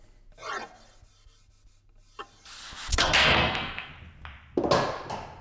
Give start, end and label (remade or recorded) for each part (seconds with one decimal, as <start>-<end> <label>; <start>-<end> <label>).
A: 0.0-2.9 recorded; 2.9-3.9 remade; 3.9-5.4 recorded

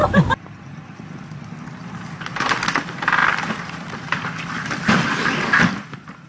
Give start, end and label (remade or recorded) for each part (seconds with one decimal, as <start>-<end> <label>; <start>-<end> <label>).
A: 0.0-2.1 remade; 2.1-3.2 recorded; 3.2-5.6 remade; 5.6-6.3 recorded

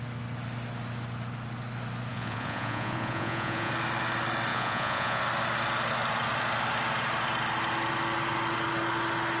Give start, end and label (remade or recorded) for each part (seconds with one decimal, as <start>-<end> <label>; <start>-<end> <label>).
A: 0.0-2.1 recorded; 2.1-3.7 remade; 3.7-4.5 recorded; 4.5-5.2 remade; 5.2-9.4 recorded